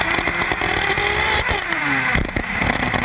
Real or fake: real